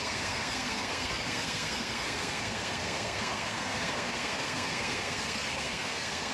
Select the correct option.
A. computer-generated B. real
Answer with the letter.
A